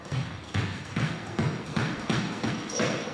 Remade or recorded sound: remade